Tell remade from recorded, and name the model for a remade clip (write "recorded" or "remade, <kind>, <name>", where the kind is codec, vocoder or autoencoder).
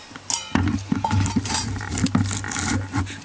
recorded